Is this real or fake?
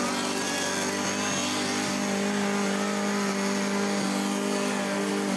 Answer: real